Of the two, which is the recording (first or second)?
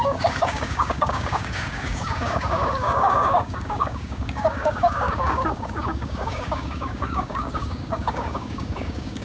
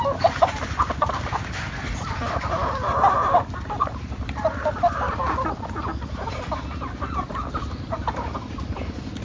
second